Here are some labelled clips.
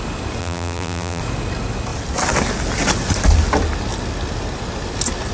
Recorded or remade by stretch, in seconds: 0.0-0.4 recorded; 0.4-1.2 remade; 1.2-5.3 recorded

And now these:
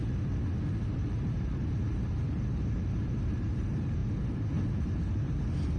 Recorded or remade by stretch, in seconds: 0.0-0.8 recorded; 0.8-4.0 remade; 4.0-4.5 recorded; 4.5-5.8 remade

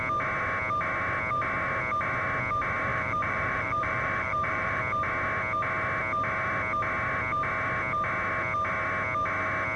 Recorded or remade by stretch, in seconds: 0.0-2.9 recorded; 2.9-4.8 remade; 4.8-9.8 recorded

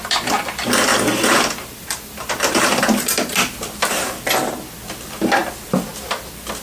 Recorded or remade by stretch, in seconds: 0.0-0.9 recorded; 0.9-2.8 remade; 2.8-6.6 recorded

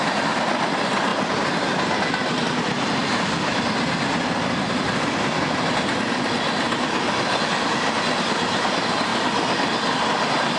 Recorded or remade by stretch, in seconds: 0.0-10.6 recorded